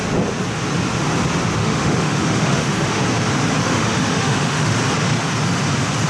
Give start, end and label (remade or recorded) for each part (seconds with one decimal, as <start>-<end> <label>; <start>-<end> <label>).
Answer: 0.0-1.6 recorded; 1.6-3.0 remade; 3.0-3.6 recorded; 3.6-4.8 remade; 4.8-6.1 recorded